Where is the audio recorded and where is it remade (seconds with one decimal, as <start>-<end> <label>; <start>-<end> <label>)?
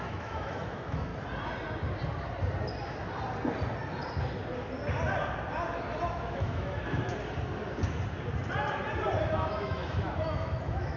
0.0-1.1 remade; 1.1-6.1 recorded; 6.1-7.1 remade; 7.1-9.2 recorded; 9.2-11.0 remade